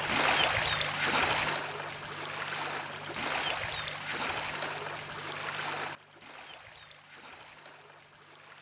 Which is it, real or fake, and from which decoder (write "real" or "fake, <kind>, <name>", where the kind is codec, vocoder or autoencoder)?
real